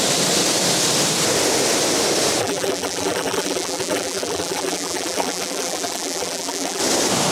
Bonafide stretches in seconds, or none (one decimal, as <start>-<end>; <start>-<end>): 0.0-2.4; 6.8-7.3